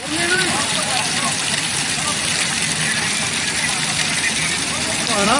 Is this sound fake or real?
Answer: fake